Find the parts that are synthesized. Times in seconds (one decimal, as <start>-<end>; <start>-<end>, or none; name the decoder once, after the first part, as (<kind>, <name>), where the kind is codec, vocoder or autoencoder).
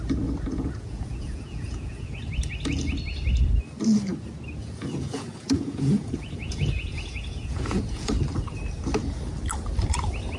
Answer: 0.5-2.2 (vocoder, Vocos); 4.6-8.1